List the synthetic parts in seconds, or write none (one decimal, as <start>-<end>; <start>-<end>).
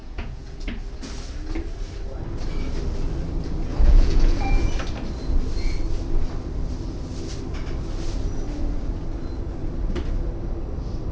0.0-0.7; 3.7-4.7